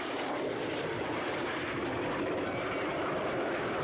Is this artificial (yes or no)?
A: yes